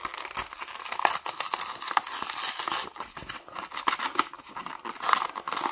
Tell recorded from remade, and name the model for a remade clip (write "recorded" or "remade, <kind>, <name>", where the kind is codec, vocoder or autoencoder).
recorded